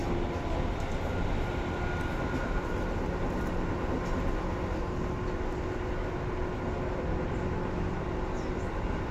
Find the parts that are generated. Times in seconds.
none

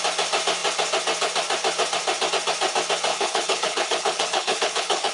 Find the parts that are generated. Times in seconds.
3.1-5.1 (codec, HILCodec)

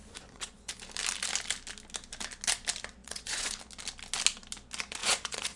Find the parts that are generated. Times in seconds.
0.0-0.7 (vocoder, Vocos); 3.0-3.6; 5.0-5.6

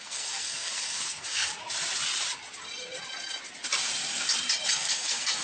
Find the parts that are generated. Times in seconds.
0.0-1.5 (codec, SNAC); 4.7-5.4

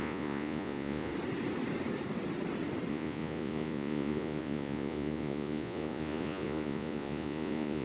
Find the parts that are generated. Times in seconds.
0.0-1.1 (vocoder, Vocos); 2.9-7.8